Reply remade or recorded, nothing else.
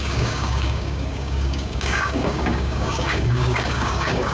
remade